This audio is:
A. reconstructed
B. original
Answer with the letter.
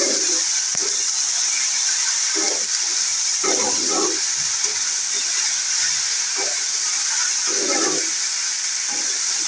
B